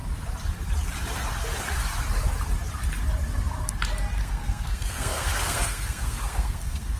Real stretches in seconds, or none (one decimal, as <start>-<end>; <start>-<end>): 0.0-4.2